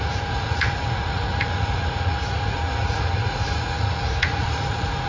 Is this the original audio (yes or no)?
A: no